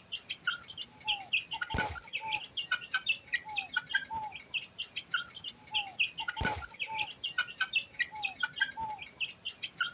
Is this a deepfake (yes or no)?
no